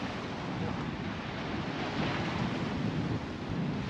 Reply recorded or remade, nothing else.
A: recorded